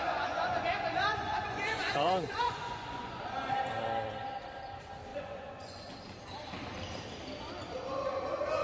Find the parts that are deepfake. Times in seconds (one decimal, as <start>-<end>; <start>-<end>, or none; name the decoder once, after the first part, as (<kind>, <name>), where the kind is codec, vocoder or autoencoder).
0.0-3.2 (vocoder, Vocos); 5.1-5.9